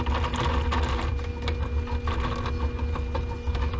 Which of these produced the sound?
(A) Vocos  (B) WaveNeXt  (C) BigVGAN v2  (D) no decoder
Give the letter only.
D